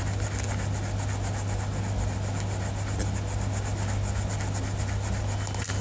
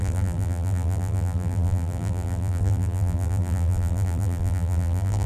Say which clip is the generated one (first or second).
second